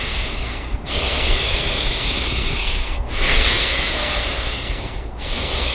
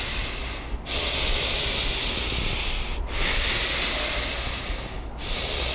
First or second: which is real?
second